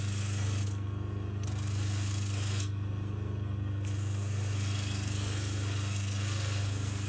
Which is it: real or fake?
fake